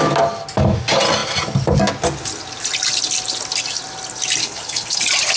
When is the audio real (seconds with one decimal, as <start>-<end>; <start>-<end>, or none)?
0.0-4.4; 5.0-5.4